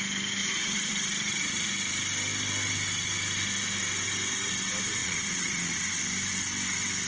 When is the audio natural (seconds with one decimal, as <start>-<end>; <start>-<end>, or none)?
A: 0.0-0.4; 1.7-5.0; 5.9-7.1